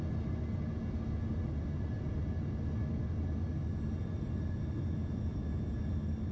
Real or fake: real